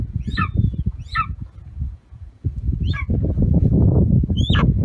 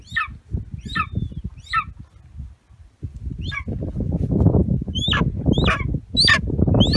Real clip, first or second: second